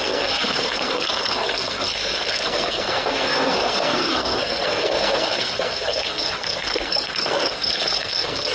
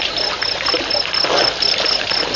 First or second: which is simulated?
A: first